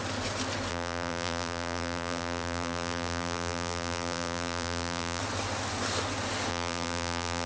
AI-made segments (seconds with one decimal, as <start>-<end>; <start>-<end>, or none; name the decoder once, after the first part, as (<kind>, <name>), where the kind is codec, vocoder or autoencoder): 0.7-5.2 (vocoder, BigVGAN v2); 6.5-7.5